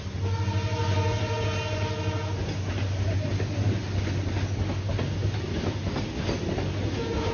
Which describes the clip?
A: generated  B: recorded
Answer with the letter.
B